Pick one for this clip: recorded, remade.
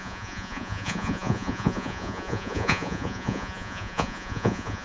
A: remade